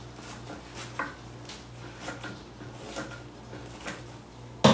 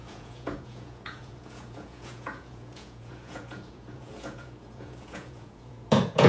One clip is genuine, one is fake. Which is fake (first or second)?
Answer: second